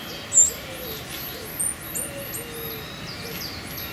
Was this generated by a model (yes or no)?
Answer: no